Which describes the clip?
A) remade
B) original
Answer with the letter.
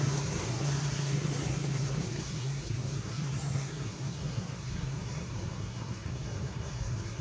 A